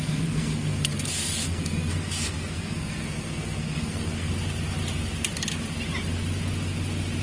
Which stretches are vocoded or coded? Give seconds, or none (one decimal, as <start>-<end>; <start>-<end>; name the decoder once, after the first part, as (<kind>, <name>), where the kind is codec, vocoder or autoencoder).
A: 0.0-4.3 (codec, SNAC)